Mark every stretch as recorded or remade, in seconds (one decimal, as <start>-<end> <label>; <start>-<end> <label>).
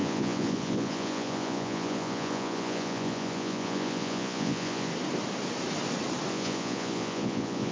0.0-4.9 remade; 4.9-6.3 recorded; 6.3-7.7 remade